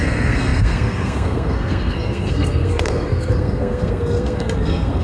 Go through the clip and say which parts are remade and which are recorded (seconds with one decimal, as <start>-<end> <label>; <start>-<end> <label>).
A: 0.0-5.0 remade